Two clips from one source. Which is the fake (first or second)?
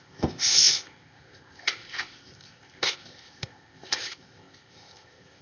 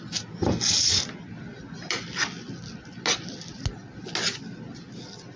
first